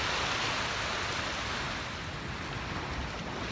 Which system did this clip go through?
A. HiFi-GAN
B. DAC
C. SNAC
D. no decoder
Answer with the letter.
D